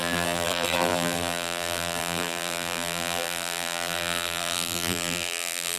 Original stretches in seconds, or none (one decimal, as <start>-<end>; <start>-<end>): none